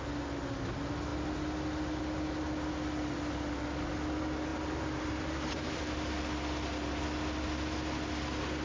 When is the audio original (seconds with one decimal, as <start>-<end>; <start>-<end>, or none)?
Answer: 0.0-4.5; 5.8-8.6